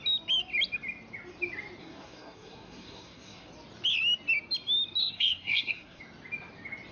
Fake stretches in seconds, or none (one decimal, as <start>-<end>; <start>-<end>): 1.8-3.5; 5.0-6.0